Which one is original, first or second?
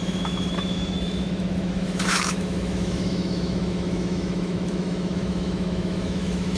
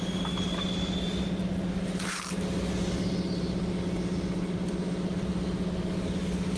second